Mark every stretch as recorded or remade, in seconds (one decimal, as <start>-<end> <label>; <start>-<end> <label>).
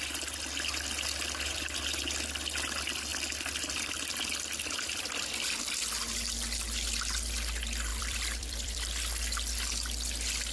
0.0-7.9 recorded; 7.9-9.0 remade; 9.0-10.5 recorded